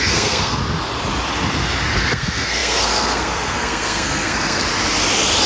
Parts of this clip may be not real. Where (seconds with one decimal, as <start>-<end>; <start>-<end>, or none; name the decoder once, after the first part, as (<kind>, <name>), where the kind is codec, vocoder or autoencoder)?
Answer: 0.0-0.6 (codec, SNAC); 1.9-4.6